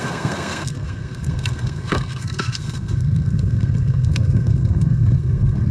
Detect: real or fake fake